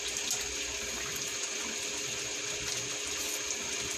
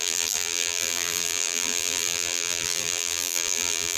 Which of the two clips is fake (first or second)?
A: second